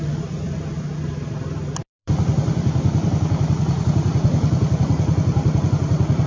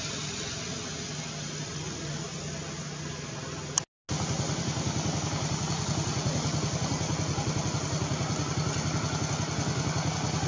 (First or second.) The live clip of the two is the second